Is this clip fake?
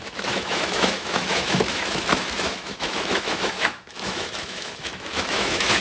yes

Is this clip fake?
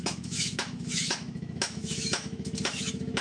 yes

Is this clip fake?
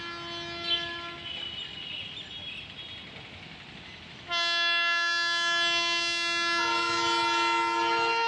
no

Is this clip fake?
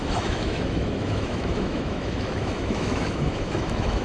yes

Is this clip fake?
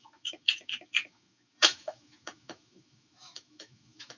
yes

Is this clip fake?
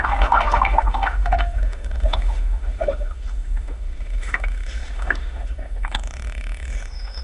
yes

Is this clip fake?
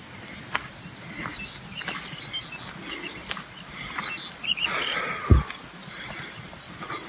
no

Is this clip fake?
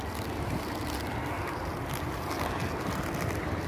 no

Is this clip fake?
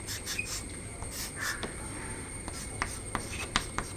no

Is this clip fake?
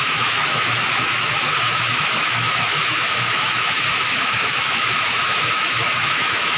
yes